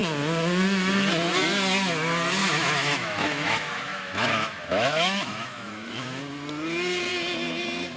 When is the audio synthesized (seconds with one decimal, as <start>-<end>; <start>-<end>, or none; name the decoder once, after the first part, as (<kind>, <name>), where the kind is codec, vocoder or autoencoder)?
2.4-6.2 (autoencoder, DAC-VAE)